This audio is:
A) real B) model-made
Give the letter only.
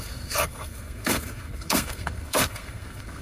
B